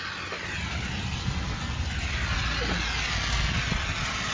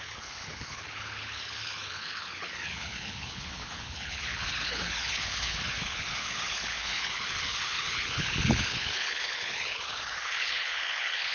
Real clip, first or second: first